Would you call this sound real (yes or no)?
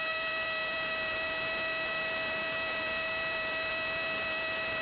no